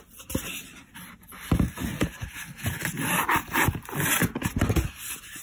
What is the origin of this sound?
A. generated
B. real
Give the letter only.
B